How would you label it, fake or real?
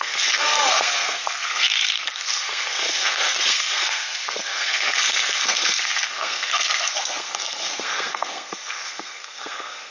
fake